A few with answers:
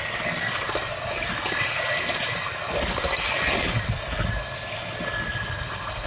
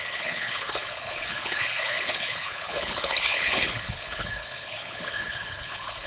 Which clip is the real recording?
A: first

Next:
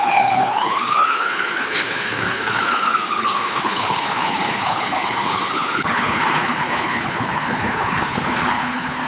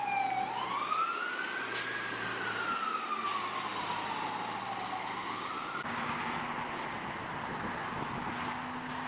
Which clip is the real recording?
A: second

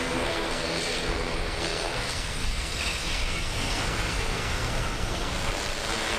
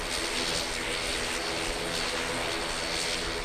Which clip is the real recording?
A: second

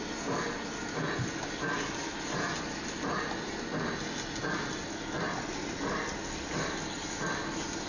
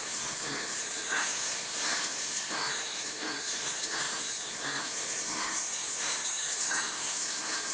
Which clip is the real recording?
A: first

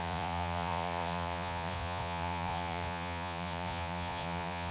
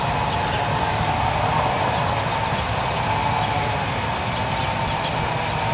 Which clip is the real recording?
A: second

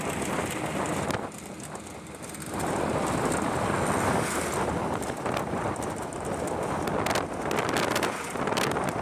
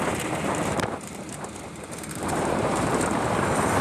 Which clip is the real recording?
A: first